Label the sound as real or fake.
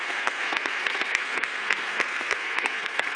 fake